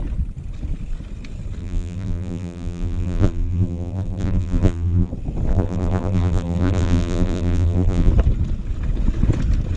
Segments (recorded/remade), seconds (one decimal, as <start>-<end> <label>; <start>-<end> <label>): 0.0-1.6 recorded; 1.6-5.1 remade; 5.1-5.5 recorded; 5.5-8.1 remade; 8.1-9.8 recorded